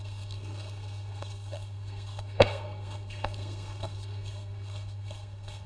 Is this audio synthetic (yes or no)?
yes